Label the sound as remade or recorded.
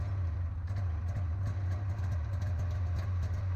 recorded